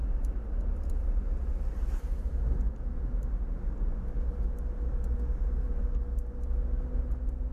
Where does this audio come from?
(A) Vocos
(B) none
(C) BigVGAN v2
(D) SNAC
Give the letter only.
B